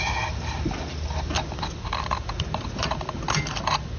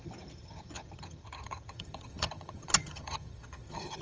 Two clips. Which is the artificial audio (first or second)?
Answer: second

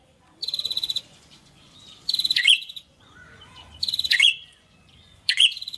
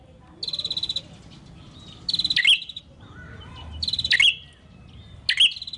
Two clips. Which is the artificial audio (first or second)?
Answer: first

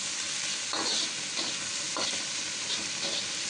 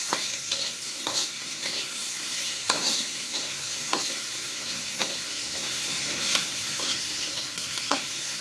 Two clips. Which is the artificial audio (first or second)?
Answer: second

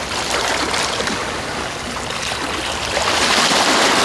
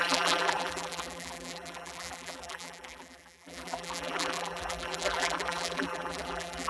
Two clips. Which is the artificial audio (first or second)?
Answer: second